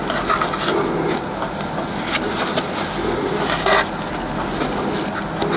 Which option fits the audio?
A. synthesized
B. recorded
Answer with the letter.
B